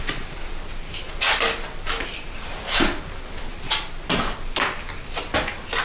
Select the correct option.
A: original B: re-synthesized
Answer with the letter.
A